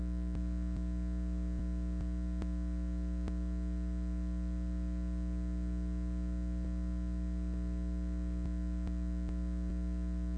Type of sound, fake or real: real